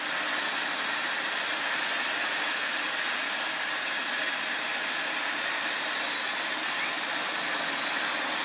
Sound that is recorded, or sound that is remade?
recorded